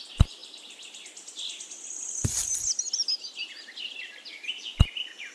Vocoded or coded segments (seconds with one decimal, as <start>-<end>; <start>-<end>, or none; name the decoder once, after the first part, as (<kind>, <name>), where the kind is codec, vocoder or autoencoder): none

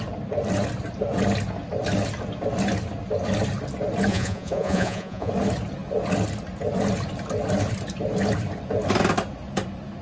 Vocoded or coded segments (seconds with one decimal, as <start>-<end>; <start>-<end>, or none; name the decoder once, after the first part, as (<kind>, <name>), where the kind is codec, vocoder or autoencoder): 4.1-5.3 (vocoder, Vocos)

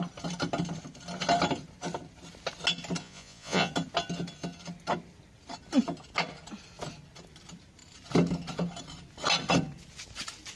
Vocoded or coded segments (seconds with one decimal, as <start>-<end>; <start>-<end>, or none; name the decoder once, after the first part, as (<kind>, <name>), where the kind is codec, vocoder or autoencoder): 3.0-3.7 (vocoder, Vocos)

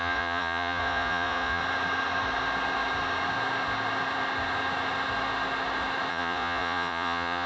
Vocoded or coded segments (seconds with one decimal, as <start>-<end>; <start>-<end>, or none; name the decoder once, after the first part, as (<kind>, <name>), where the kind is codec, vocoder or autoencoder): 0.0-1.6 (vocoder, Vocos); 6.1-7.5

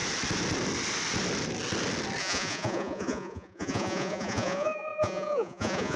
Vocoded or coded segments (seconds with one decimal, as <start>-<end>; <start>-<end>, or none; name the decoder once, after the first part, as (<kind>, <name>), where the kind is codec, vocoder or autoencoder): 2.2-6.0 (vocoder, Vocos)

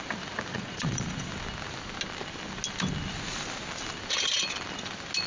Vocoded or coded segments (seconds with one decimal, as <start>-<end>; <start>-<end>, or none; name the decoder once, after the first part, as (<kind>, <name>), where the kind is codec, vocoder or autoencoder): 0.5-1.3 (vocoder, Vocos)